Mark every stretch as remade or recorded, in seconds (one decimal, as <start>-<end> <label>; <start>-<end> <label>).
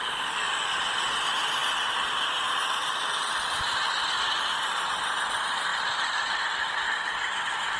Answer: 0.0-7.8 recorded